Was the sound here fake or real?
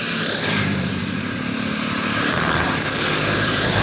fake